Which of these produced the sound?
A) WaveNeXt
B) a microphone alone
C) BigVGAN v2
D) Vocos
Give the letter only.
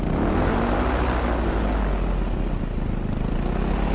B